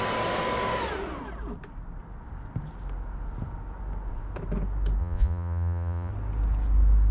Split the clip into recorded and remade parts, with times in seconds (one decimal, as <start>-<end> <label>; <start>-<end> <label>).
0.0-5.0 recorded; 5.0-6.1 remade; 6.1-7.1 recorded